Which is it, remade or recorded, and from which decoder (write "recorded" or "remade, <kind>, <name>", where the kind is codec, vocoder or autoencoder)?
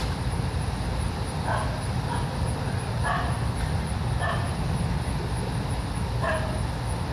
recorded